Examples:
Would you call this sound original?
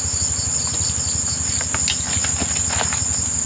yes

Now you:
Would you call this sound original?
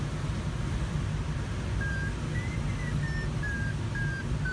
yes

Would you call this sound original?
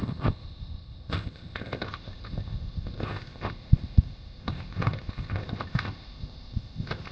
no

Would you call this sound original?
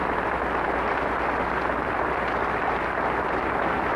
yes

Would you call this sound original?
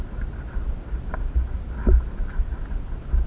yes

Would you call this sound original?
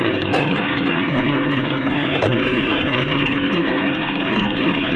no